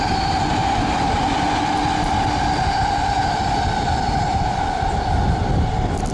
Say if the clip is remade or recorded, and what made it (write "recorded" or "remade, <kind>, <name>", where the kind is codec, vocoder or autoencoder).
recorded